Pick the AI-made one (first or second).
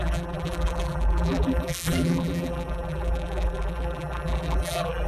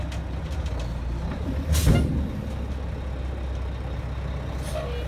first